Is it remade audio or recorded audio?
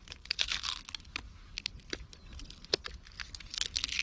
recorded